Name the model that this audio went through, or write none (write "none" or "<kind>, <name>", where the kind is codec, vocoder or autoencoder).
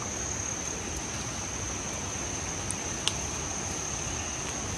none